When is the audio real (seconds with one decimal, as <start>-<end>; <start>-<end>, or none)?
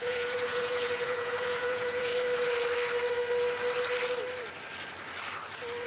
2.1-5.9